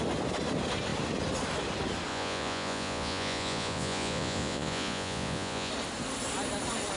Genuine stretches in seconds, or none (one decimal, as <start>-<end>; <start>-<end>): 0.0-2.1; 5.7-7.0